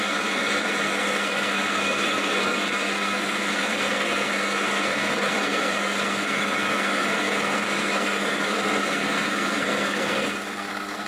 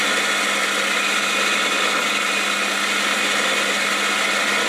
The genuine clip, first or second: second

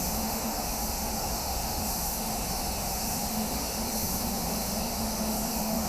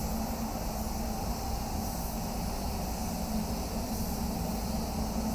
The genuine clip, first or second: second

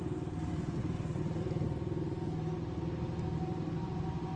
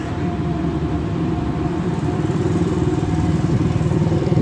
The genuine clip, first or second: first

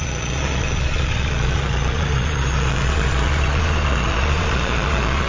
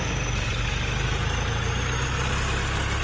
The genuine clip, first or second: second